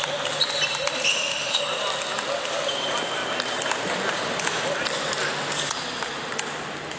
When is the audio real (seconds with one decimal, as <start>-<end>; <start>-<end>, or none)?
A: 0.0-1.1; 1.6-7.0